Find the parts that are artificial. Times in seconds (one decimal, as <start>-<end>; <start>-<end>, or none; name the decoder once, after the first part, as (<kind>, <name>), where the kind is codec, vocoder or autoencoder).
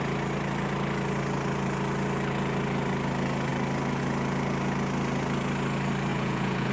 6.1-6.7 (vocoder, Vocos)